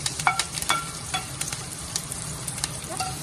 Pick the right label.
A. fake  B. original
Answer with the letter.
A